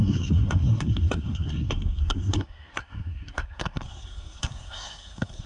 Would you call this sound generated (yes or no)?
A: yes